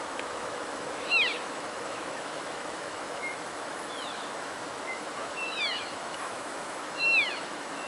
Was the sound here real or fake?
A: fake